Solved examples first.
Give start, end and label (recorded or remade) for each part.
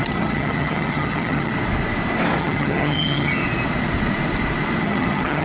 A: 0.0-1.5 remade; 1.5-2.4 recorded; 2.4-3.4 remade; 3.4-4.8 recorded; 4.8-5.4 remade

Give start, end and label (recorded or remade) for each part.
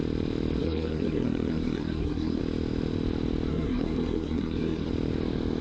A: 0.0-0.6 recorded; 0.6-2.4 remade; 2.4-3.5 recorded; 3.5-4.9 remade; 4.9-5.6 recorded